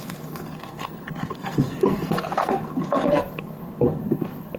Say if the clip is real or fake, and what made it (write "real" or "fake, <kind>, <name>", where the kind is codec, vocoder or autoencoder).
fake, codec, SNAC